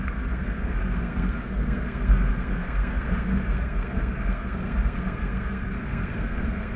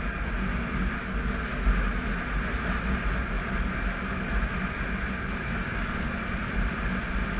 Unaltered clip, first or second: second